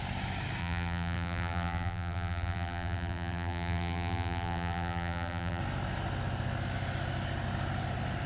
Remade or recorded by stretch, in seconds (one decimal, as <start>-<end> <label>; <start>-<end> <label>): 0.0-0.6 recorded; 0.6-5.6 remade; 5.6-8.3 recorded